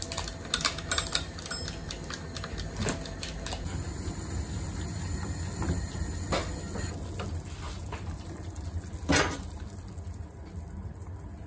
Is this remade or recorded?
recorded